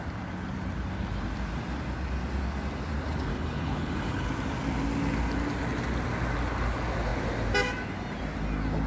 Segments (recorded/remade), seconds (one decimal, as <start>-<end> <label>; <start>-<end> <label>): 0.0-3.3 recorded; 3.3-4.3 remade; 4.3-8.9 recorded